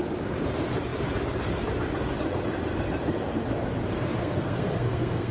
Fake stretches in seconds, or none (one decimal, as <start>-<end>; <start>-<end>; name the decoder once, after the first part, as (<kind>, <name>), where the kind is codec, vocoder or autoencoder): 4.2-5.3 (codec, SNAC)